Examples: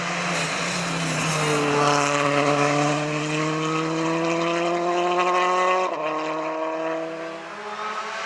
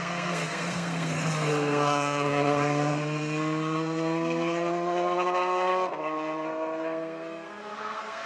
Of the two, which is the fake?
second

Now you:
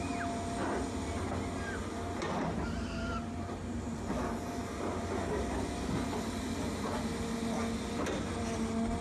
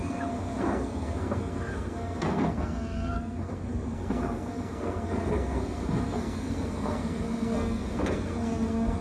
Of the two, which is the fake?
second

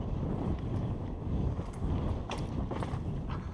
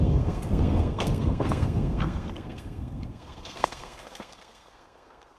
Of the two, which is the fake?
second